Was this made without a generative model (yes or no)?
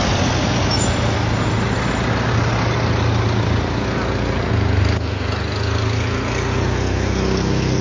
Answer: yes